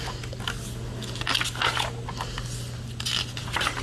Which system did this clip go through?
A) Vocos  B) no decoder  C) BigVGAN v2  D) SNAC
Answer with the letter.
B